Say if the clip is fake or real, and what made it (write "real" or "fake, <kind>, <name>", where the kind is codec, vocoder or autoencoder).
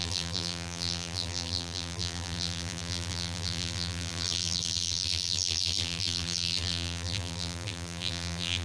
fake, vocoder, BigVGAN v2